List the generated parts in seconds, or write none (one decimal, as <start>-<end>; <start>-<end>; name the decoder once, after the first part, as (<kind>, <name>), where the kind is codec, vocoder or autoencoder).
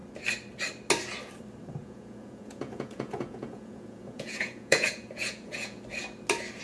1.8-5.8 (vocoder, Vocos)